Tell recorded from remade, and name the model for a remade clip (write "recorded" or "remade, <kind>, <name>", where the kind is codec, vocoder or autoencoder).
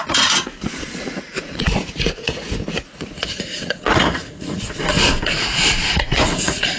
remade, vocoder, Vocos